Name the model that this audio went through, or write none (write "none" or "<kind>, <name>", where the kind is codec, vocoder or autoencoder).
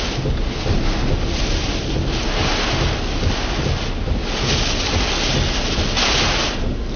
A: none